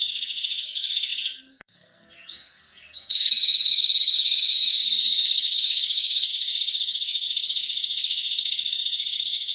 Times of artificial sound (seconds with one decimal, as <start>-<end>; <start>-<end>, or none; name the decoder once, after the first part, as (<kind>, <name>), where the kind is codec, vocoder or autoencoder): 0.0-9.5 (codec, SNAC)